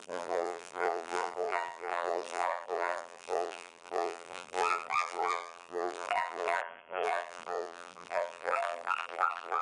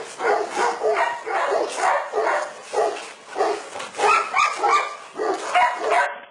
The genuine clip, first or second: second